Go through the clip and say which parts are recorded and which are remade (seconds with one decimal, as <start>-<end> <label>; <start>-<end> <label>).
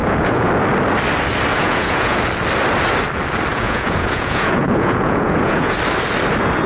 0.0-0.5 remade; 0.5-1.5 recorded; 1.5-2.2 remade; 2.2-3.5 recorded; 3.5-5.7 remade; 5.7-6.7 recorded